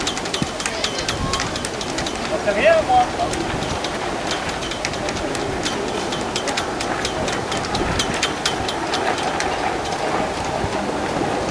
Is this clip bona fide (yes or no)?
yes